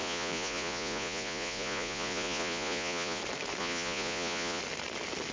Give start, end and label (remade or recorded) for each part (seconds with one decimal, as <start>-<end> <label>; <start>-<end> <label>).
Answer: 0.0-3.2 remade; 3.2-3.6 recorded; 3.6-4.6 remade; 4.6-5.3 recorded

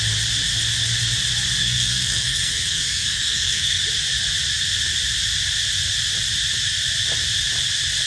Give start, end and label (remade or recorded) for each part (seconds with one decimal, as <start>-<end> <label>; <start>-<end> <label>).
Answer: 0.0-1.6 recorded; 1.6-3.8 remade; 3.8-8.1 recorded